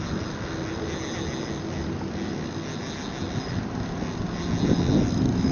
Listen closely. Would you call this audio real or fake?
real